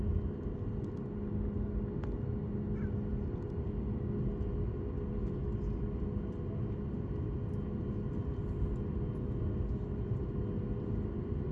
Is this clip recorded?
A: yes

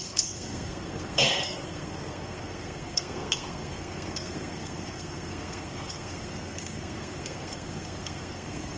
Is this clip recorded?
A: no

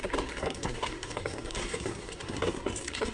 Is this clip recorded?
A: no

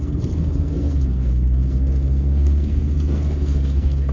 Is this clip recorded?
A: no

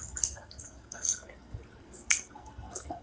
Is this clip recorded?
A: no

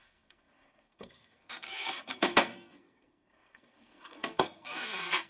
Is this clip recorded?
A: no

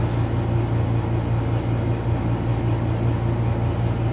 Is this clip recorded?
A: yes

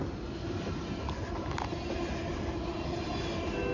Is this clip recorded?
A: yes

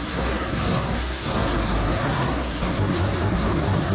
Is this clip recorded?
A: no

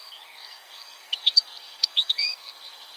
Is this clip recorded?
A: no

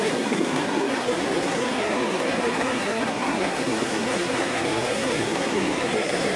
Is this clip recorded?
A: no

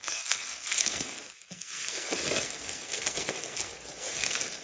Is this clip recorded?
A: no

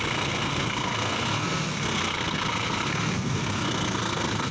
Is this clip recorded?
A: no